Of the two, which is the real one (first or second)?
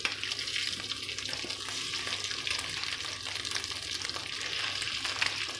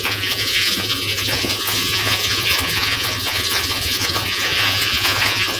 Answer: first